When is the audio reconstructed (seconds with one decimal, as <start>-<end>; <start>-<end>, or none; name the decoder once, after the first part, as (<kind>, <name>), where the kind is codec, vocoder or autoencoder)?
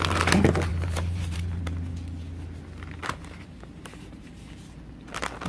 0.7-1.9 (vocoder, BigVGAN v2); 3.0-4.6